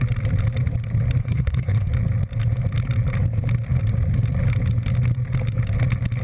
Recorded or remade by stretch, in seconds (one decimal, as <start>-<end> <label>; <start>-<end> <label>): 0.0-1.2 recorded; 1.2-1.9 remade; 1.9-6.2 recorded

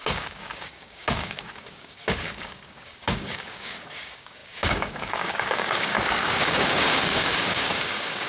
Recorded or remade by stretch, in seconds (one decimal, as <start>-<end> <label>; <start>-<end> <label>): 0.0-8.3 remade

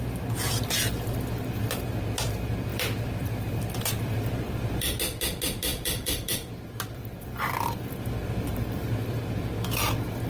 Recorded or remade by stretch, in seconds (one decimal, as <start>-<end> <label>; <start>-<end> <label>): 0.0-2.7 recorded; 2.7-5.0 remade; 5.0-5.7 recorded; 5.7-9.2 remade; 9.2-10.3 recorded